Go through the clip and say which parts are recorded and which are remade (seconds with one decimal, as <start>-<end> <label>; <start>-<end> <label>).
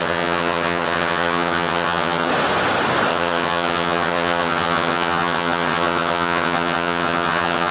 0.0-2.3 remade; 2.3-3.1 recorded; 3.1-7.7 remade